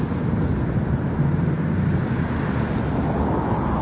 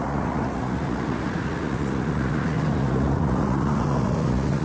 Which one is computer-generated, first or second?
second